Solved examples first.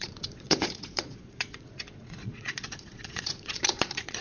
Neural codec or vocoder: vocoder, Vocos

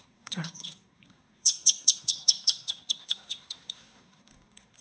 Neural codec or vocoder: codec, SNAC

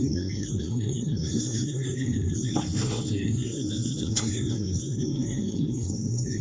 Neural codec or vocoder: codec, SNAC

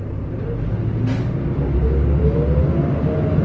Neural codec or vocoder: none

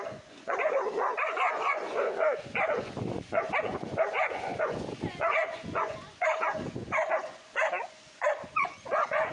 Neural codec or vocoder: vocoder, Vocos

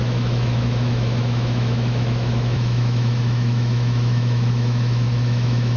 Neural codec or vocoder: autoencoder, DAC-VAE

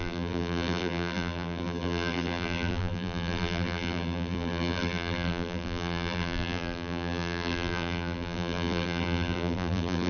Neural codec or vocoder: vocoder, BigVGAN v2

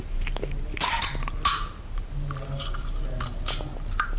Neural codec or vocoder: none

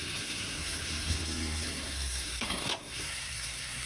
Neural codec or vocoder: codec, SNAC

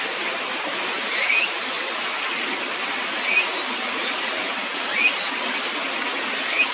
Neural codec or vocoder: none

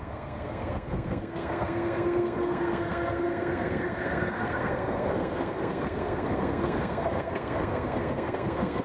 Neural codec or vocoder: codec, SNAC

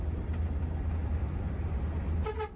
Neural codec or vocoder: none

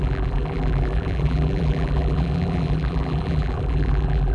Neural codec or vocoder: vocoder, BigVGAN v2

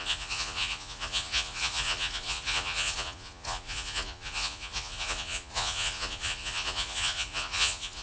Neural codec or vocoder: vocoder, Vocos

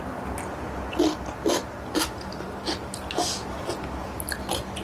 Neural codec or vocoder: none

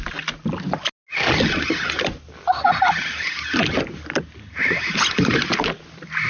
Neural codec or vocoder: none